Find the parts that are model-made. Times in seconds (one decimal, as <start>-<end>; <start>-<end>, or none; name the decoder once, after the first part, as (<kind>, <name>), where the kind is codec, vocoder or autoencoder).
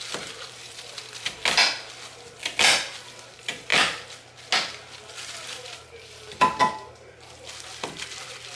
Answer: 0.0-1.4 (vocoder, BigVGAN v2); 3.1-3.7; 5.9-6.6; 7.7-8.6